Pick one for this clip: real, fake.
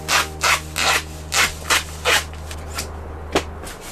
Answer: real